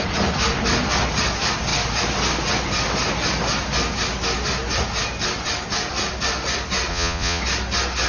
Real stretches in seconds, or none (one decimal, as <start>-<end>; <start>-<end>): 0.0-6.9; 7.4-8.1